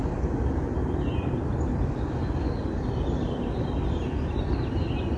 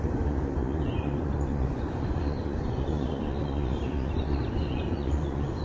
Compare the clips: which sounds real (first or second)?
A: first